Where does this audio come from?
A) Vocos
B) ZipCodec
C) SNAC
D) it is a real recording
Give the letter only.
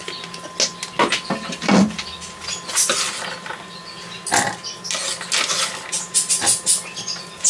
D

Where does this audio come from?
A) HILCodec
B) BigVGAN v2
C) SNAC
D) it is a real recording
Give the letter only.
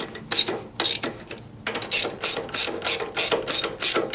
D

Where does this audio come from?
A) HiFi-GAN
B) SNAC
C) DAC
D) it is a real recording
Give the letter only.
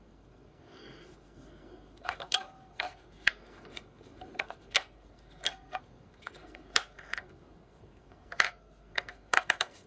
B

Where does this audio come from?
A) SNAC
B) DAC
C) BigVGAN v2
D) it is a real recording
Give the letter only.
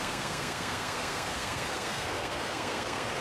A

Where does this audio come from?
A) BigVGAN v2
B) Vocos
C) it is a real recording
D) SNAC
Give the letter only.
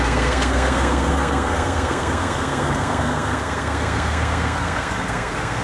D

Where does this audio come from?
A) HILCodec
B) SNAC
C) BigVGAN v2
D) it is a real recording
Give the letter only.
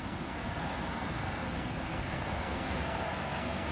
B